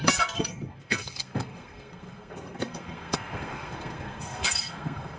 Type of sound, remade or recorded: remade